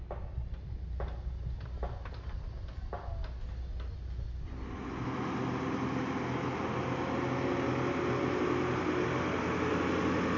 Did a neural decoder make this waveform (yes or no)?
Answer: no